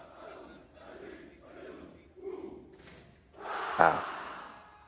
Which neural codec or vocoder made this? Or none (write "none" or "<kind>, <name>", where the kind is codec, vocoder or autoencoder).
none